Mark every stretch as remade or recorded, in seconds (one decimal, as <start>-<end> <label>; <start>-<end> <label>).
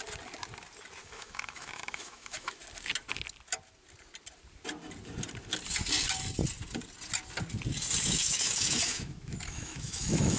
0.0-1.0 recorded; 1.0-2.6 remade; 2.6-8.0 recorded; 8.0-10.4 remade